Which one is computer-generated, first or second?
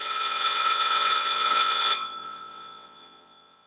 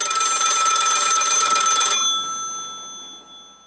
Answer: first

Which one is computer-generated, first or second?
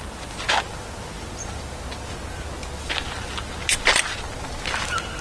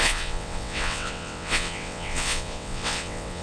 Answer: second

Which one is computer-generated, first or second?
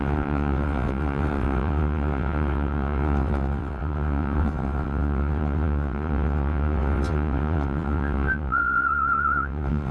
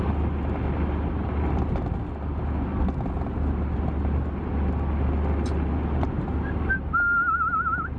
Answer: first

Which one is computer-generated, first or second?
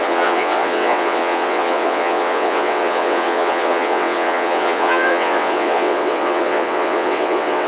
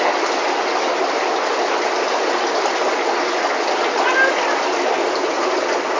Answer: first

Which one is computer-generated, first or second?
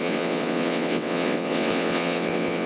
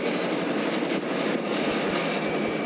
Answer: first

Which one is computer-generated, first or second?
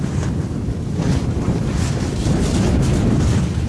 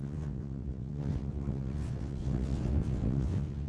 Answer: second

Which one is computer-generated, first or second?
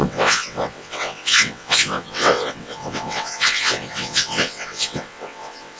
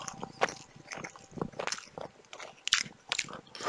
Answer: first